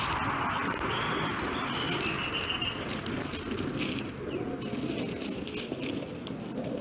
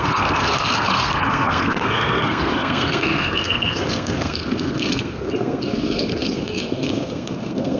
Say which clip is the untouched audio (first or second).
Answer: first